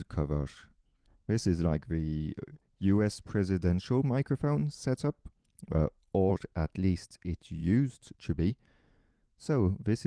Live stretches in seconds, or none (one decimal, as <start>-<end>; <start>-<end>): 2.5-6.3